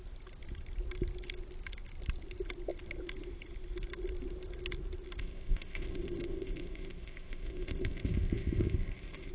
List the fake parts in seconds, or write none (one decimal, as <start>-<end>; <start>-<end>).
5.2-9.3